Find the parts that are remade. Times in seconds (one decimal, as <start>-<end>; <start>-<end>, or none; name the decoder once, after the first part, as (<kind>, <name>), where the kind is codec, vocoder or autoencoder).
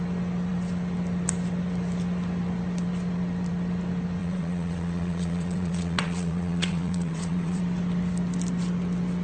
4.2-7.6 (vocoder, WaveNeXt)